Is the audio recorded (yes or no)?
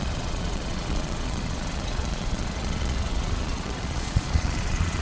no